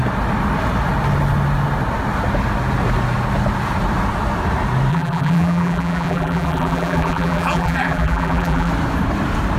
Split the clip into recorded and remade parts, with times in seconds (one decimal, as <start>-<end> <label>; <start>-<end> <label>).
0.0-4.9 recorded; 4.9-8.7 remade; 8.7-9.6 recorded